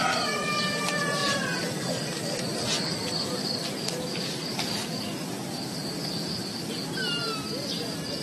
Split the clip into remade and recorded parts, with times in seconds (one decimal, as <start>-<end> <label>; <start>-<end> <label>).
0.0-8.2 recorded